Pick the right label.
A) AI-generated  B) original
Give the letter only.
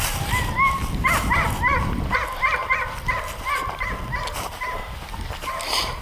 B